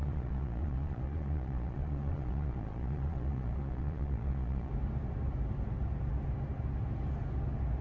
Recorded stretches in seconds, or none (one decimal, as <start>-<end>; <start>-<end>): 4.7-7.8

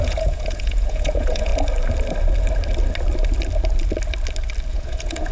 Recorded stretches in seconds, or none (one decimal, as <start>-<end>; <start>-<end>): 1.5-4.7

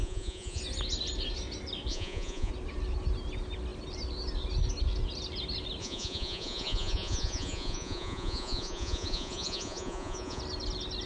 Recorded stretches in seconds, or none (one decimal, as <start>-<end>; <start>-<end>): 0.6-1.9; 2.5-5.8; 10.4-11.1

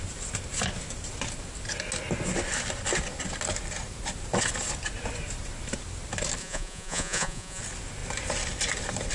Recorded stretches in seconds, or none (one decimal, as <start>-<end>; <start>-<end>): 0.0-6.4; 7.6-9.1

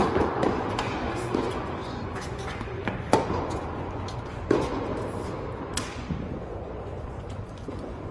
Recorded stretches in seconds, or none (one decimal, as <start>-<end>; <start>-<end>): 4.9-5.6

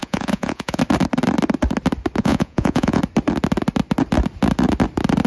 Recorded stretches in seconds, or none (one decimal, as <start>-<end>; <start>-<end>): 0.8-2.2; 3.0-5.3

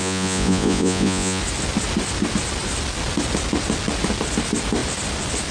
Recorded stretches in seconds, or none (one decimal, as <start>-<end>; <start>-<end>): 1.4-5.5

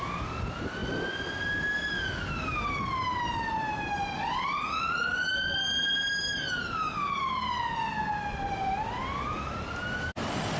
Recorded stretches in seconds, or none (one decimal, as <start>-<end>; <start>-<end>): 0.0-4.6; 5.3-10.6